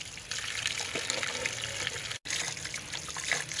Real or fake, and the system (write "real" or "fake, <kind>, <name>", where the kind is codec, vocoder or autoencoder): real